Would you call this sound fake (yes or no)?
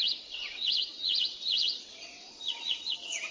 yes